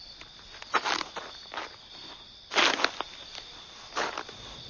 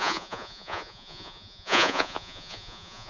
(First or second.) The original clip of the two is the first